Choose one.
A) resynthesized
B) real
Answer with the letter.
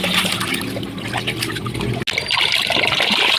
B